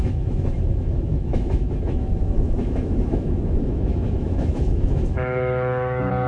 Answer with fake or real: fake